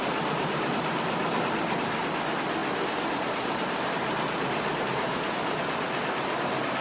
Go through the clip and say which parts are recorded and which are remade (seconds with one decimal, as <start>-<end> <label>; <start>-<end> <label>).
0.0-6.8 recorded

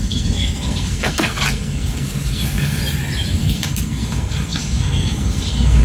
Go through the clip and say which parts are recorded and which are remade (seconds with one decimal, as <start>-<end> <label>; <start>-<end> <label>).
0.0-2.8 remade; 2.8-3.4 recorded; 3.4-5.8 remade